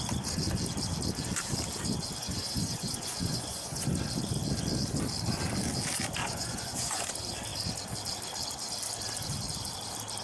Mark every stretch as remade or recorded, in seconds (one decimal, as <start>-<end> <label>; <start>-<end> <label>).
0.0-2.2 recorded; 2.2-3.9 remade; 3.9-6.2 recorded; 6.2-7.1 remade; 7.1-10.2 recorded

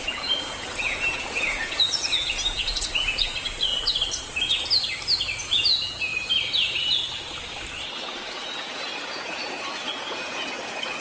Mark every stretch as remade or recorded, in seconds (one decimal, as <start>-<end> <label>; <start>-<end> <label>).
0.0-3.7 remade; 3.7-5.4 recorded; 5.4-6.1 remade; 6.1-7.9 recorded; 7.9-11.0 remade

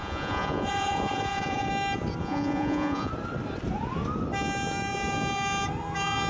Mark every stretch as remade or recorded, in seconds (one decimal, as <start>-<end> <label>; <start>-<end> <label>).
0.0-1.7 remade; 1.7-2.2 recorded; 2.2-3.1 remade; 3.1-6.3 recorded

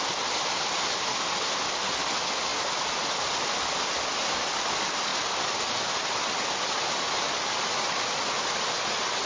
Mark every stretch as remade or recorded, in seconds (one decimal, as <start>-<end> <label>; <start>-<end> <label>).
0.0-9.3 recorded

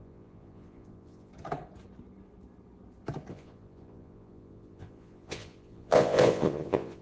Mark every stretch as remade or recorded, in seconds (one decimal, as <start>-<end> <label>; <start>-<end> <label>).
0.0-1.3 remade; 1.3-3.3 recorded; 3.3-7.0 remade